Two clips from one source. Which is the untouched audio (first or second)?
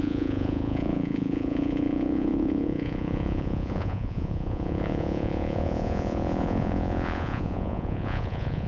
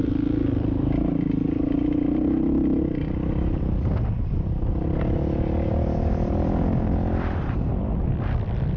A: second